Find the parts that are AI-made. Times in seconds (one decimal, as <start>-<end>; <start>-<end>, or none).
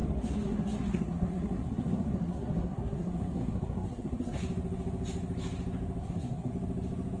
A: 0.0-4.4; 6.0-6.5